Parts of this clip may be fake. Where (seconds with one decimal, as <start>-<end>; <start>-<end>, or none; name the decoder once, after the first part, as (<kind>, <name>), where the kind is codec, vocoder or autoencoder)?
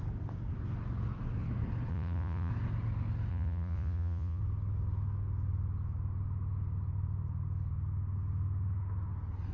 1.9-2.5 (vocoder, Vocos); 3.3-4.4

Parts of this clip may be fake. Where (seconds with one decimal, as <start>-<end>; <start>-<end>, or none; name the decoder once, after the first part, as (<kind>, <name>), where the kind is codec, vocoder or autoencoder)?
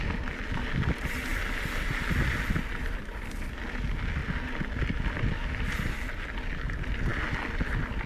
none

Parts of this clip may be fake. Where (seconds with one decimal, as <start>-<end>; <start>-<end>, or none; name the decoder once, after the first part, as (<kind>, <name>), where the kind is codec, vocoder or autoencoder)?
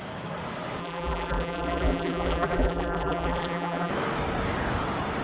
0.8-3.9 (vocoder, BigVGAN v2)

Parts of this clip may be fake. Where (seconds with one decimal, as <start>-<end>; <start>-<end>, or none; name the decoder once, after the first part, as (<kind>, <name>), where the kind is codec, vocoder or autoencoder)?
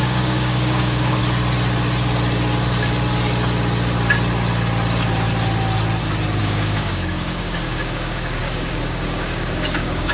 0.0-1.2 (codec, DAC); 6.4-10.1